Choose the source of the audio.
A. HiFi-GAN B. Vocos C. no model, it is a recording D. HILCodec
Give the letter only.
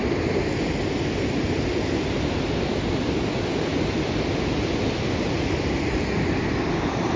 C